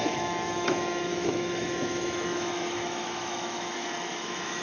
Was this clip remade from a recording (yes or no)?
yes